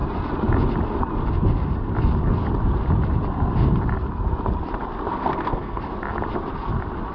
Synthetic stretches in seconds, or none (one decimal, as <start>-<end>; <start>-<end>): 5.1-5.8